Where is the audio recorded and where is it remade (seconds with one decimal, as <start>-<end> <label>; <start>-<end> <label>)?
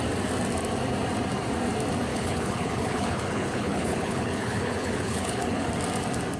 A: 0.0-2.1 recorded; 2.1-5.7 remade; 5.7-6.4 recorded